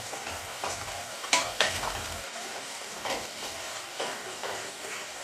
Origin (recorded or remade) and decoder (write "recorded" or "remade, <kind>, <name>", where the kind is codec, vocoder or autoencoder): remade, codec, DAC